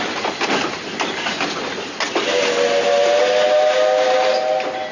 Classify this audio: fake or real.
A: real